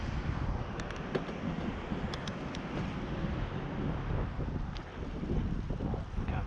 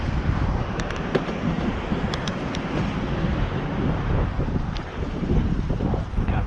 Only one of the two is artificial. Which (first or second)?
second